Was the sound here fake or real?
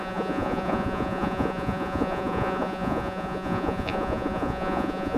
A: fake